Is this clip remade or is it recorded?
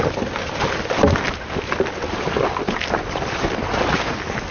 recorded